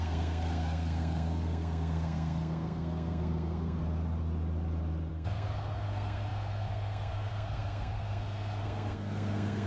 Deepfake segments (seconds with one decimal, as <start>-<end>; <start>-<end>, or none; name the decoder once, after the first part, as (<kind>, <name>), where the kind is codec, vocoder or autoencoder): 0.0-3.8 (codec, SNAC); 5.1-9.7